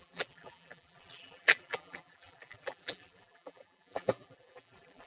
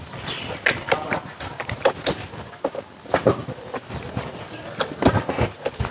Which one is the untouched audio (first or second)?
second